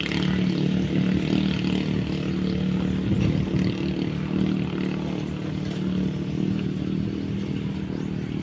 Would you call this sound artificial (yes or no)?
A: no